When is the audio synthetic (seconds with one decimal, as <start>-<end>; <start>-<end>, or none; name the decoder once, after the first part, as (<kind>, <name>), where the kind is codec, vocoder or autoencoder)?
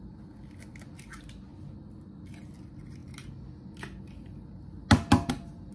none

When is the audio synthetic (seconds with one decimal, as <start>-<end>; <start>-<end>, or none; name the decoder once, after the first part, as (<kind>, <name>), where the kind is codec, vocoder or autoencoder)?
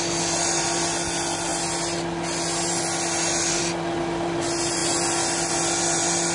none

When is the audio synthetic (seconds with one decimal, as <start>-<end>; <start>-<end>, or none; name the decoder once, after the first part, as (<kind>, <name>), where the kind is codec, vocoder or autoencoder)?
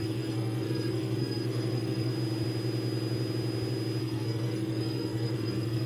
0.0-2.1 (codec, SNAC); 4.0-5.9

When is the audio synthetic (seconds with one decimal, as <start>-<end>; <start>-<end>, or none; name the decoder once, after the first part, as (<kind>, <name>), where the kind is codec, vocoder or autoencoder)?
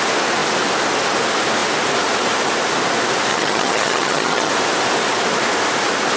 3.3-4.5 (vocoder, HiFi-GAN)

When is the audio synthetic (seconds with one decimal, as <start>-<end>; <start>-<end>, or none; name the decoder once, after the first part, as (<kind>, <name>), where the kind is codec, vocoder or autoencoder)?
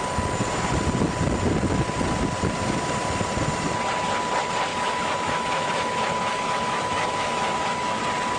4.7-8.0 (autoencoder, DAC-VAE)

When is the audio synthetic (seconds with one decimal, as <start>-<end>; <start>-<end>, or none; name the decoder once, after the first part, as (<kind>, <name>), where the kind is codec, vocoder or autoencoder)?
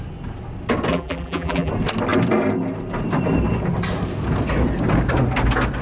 0.9-1.7 (vocoder, BigVGAN v2)